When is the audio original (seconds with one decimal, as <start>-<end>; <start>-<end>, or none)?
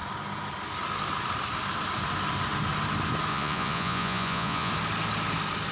0.0-3.3; 4.7-5.7